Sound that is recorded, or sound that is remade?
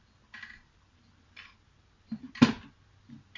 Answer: recorded